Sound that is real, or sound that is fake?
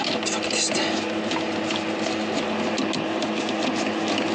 real